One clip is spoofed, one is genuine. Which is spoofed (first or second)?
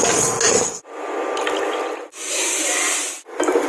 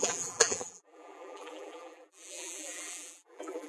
second